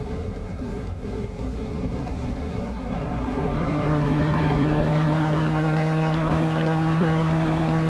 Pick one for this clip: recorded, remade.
remade